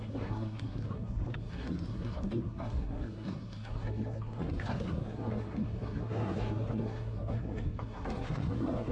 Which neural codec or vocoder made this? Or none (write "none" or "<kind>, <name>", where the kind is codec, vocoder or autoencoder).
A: codec, SNAC